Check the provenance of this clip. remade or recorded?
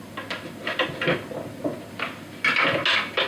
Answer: recorded